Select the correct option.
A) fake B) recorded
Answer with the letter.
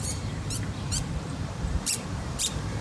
A